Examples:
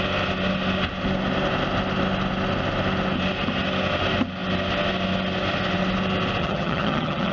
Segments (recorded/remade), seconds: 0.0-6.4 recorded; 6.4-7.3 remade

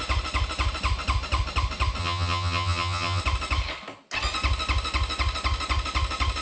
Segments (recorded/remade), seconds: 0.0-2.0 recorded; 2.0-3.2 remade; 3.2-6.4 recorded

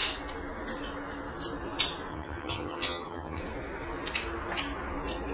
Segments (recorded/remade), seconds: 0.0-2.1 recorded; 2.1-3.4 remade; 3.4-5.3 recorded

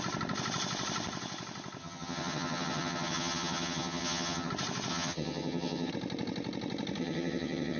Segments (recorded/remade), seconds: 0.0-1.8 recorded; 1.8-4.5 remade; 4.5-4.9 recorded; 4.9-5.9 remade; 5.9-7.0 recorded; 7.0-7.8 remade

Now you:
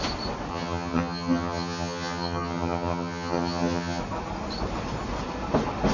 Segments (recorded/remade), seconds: 0.0-0.5 recorded; 0.5-4.0 remade; 4.0-5.9 recorded

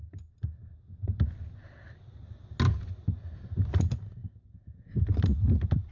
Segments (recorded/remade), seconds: 0.0-5.9 recorded

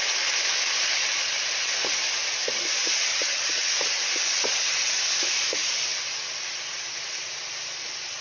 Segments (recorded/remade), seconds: 0.0-3.1 recorded; 3.1-3.7 remade; 3.7-8.2 recorded

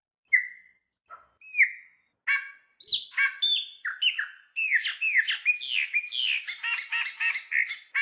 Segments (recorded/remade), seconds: 0.0-8.0 recorded